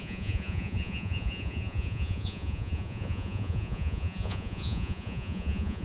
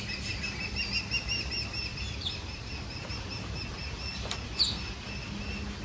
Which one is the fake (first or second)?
first